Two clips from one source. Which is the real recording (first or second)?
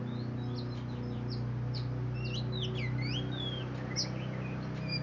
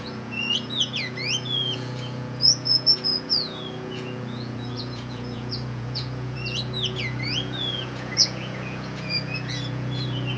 first